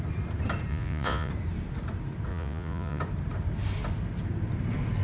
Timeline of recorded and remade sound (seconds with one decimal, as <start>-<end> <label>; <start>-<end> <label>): 0.0-0.7 recorded; 0.7-1.3 remade; 1.3-2.3 recorded; 2.3-3.0 remade; 3.0-5.0 recorded